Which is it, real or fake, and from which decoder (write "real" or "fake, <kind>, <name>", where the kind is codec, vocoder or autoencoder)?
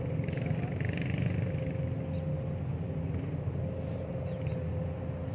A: real